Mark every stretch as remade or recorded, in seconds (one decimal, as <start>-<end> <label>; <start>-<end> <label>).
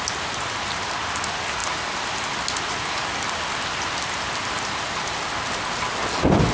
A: 0.0-6.5 recorded